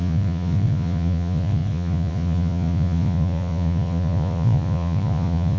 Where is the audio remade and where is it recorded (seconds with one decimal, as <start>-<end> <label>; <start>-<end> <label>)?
0.0-5.6 remade